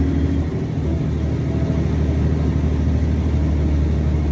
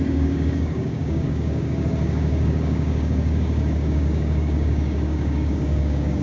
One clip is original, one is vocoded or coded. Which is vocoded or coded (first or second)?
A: second